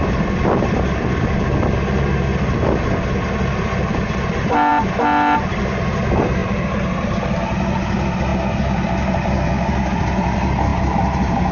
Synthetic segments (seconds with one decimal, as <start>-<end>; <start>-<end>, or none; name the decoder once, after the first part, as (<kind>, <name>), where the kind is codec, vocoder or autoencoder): 6.4-7.6 (vocoder, BigVGAN v2)